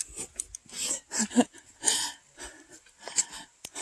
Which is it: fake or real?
real